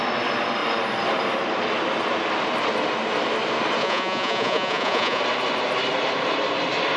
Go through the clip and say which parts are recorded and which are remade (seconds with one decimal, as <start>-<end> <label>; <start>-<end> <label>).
0.0-3.8 recorded; 3.8-5.2 remade; 5.2-7.0 recorded